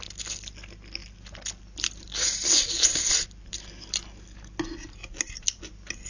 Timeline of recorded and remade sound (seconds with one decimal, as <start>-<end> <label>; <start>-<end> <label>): 0.0-1.0 recorded; 1.0-4.0 remade; 4.0-5.0 recorded; 5.0-5.6 remade; 5.6-6.1 recorded